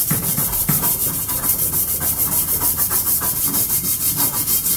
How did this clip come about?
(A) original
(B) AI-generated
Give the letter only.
A